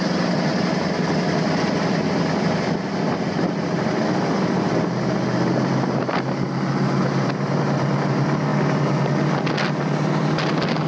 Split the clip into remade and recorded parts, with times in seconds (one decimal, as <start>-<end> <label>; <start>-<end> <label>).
0.0-10.9 recorded